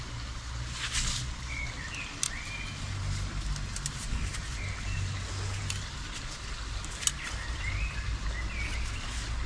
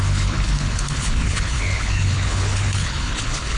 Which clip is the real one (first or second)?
first